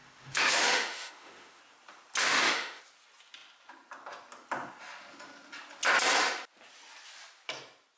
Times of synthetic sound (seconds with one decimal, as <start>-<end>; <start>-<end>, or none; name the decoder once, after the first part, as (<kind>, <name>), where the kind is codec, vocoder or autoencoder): 0.0-1.6 (autoencoder, DAC-VAE); 2.2-2.8